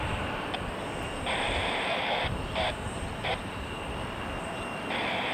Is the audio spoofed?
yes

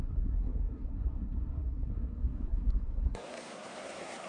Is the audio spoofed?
yes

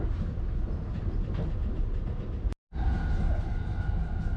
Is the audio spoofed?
no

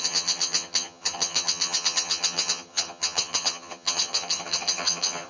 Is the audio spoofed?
yes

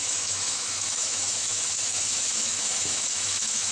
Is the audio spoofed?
yes